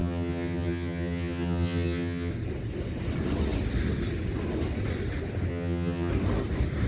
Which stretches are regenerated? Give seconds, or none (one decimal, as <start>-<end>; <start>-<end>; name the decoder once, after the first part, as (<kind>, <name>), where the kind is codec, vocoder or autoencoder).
0.0-2.3 (vocoder, HiFi-GAN); 5.5-6.1